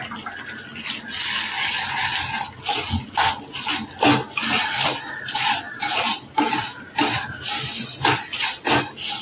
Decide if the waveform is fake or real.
real